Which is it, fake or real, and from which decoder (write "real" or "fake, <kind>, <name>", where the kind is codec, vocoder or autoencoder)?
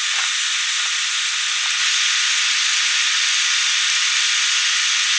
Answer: real